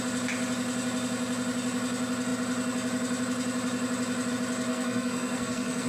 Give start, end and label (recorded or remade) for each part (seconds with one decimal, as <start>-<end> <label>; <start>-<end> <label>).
0.0-4.7 recorded; 4.7-5.9 remade